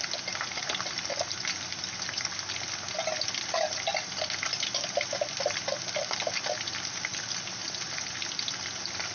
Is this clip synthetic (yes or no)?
no